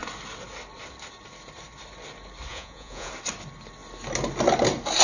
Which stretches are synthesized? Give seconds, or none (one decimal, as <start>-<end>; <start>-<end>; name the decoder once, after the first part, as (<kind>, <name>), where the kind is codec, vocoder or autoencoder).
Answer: 2.5-3.1 (vocoder, Vocos)